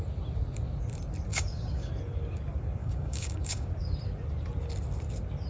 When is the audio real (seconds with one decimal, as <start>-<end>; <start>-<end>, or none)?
0.0-1.3; 1.9-2.8; 3.7-5.5

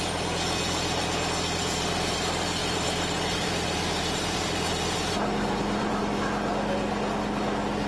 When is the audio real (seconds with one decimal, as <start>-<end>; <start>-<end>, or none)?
0.0-2.6; 6.0-7.9

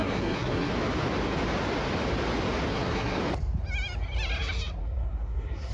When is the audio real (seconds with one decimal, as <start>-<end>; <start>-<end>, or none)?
0.7-2.7; 3.2-4.8

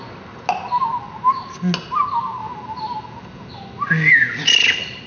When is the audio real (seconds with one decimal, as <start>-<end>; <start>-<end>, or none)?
0.0-5.1

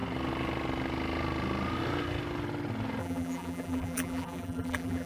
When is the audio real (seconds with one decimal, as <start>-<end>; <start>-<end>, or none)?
0.0-3.0

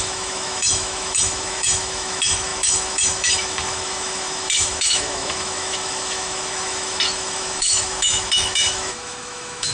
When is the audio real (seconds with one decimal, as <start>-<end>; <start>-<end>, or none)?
none

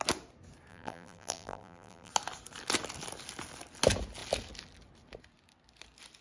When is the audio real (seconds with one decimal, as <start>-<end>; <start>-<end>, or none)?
0.0-0.7; 2.1-6.2